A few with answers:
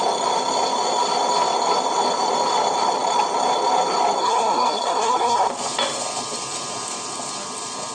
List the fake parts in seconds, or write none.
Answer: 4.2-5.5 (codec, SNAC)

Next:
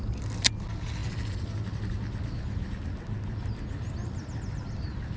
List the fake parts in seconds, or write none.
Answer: none

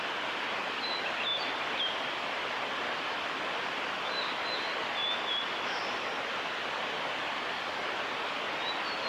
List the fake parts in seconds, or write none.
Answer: 1.3-3.1 (vocoder, BigVGAN v2); 5.0-7.7

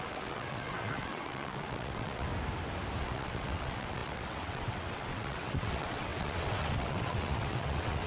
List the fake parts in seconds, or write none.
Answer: 0.0-2.3 (vocoder, WaveNeXt); 3.0-8.1